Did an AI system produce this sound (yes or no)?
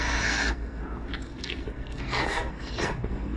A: yes